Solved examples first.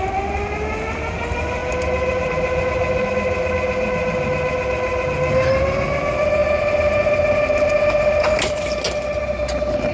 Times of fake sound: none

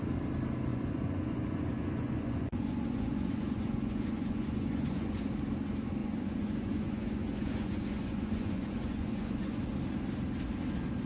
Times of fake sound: 0.7-5.2 (vocoder, Vocos); 6.0-9.6

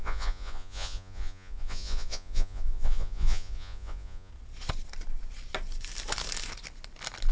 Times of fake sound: 0.0-4.3 (vocoder, Vocos)

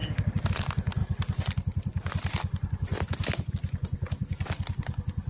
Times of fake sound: none

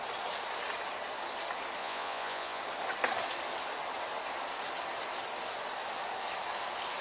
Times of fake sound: 1.8-2.6 (vocoder, Vocos)